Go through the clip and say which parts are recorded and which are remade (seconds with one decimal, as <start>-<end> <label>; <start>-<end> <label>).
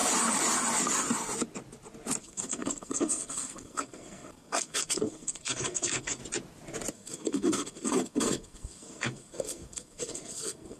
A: 0.0-2.2 recorded; 2.2-6.2 remade; 6.2-6.9 recorded; 6.9-10.8 remade